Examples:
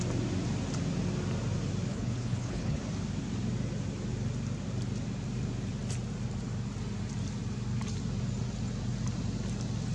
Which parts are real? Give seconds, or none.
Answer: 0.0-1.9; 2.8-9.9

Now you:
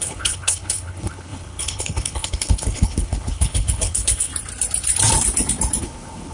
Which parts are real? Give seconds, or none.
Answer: 4.3-5.8

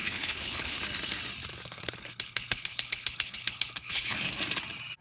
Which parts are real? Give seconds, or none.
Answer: 0.8-1.5; 4.3-5.0

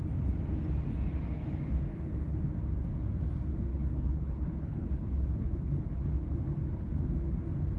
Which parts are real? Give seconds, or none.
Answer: 0.0-1.9; 2.4-3.7; 7.0-7.8

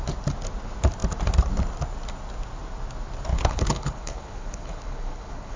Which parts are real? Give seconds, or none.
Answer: 0.0-3.3

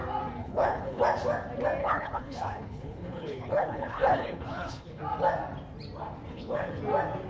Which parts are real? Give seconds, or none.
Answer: 0.0-0.4; 1.0-1.8; 5.0-6.3; 6.8-7.3

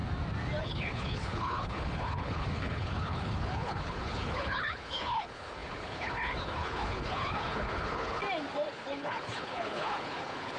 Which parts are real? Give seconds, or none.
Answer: 0.0-0.6; 8.2-8.7